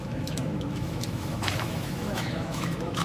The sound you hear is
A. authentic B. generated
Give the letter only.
B